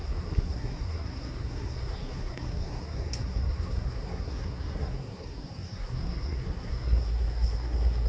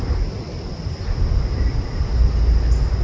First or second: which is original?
second